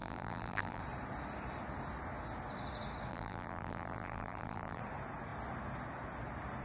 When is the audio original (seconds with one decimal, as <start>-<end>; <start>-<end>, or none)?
0.8-3.1; 4.8-6.6